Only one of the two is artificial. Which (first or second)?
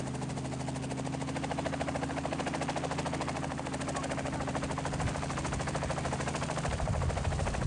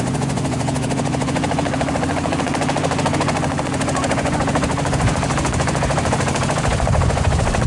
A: second